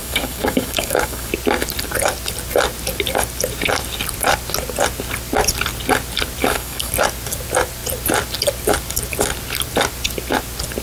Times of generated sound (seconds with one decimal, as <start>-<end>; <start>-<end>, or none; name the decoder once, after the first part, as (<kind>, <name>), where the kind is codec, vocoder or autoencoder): 0.0-1.3 (codec, DAC); 6.4-6.9